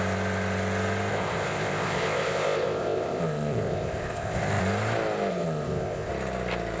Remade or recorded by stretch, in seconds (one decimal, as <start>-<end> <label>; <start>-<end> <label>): 0.0-1.1 recorded; 1.1-4.6 remade; 4.6-5.3 recorded; 5.3-6.1 remade; 6.1-6.8 recorded

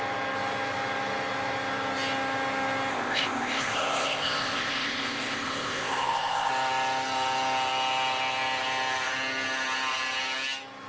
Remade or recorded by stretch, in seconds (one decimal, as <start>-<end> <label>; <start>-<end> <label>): 0.0-2.9 recorded; 2.9-6.5 remade; 6.5-10.9 recorded

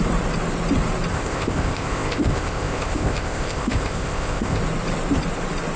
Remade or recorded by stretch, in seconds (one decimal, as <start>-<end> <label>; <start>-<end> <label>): 0.0-1.1 recorded; 1.1-4.6 remade; 4.6-5.8 recorded

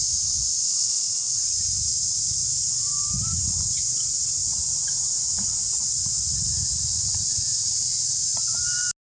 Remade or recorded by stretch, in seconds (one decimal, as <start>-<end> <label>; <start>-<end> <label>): 0.0-0.6 recorded; 0.6-1.3 remade; 1.3-9.1 recorded

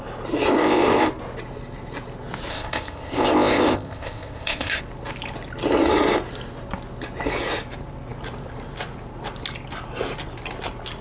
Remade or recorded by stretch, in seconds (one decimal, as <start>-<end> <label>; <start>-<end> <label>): 0.0-0.6 recorded; 0.6-1.1 remade; 1.1-2.5 recorded; 2.5-4.8 remade; 4.8-11.0 recorded

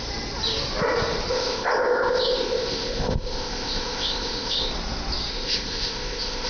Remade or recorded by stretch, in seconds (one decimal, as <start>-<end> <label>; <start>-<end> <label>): 0.0-1.3 recorded; 1.3-4.7 remade; 4.7-5.3 recorded; 5.3-6.5 remade